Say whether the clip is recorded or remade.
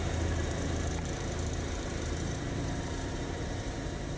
remade